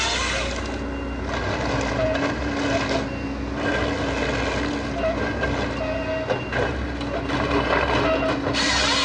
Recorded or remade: recorded